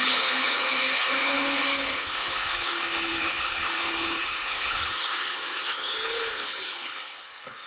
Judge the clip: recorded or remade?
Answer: remade